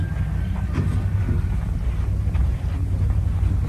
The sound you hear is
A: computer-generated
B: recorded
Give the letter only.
B